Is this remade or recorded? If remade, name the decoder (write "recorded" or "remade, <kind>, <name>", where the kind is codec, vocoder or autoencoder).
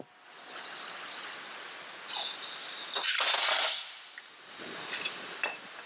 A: recorded